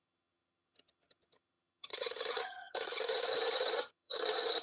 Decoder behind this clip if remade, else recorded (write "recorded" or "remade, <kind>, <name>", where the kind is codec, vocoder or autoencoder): remade, vocoder, HiFi-GAN